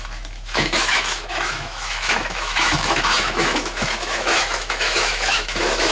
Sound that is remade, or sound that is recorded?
remade